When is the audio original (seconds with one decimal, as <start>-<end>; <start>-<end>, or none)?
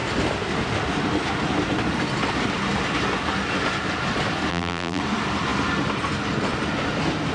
0.0-4.5; 5.0-7.3